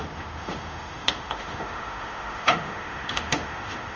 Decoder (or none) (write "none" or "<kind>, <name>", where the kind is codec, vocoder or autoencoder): autoencoder, DAC-VAE